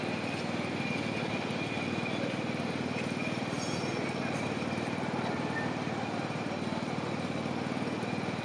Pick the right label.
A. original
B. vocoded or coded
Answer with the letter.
A